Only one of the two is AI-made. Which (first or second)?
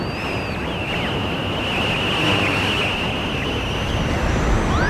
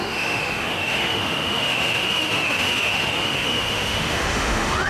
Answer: second